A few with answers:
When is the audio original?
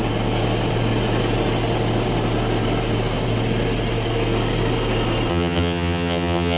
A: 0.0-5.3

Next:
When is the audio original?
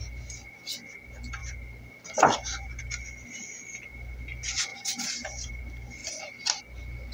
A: 0.0-4.7; 5.5-6.0; 6.6-7.1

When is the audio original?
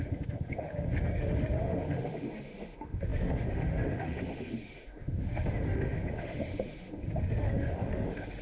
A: none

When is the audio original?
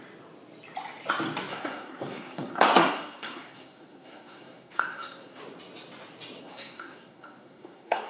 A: 0.0-1.5; 5.4-6.4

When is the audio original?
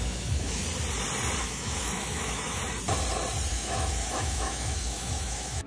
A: 0.6-1.4; 2.6-3.5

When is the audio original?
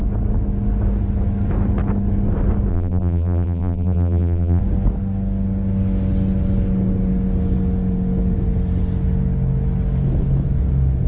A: 0.0-2.7; 4.6-11.1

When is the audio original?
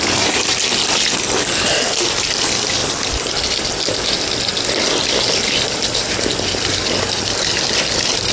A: 0.0-8.3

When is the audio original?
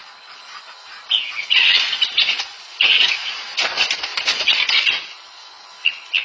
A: 0.0-6.2